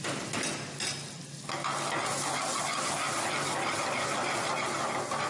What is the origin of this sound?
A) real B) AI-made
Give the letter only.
A